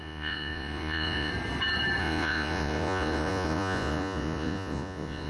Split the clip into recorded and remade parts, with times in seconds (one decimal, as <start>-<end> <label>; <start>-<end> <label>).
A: 0.0-1.3 remade; 1.3-2.0 recorded; 2.0-5.3 remade